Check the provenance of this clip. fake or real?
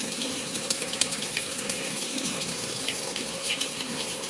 fake